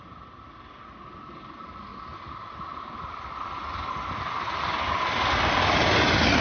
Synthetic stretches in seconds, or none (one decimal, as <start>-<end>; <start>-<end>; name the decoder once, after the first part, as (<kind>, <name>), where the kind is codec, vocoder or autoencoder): none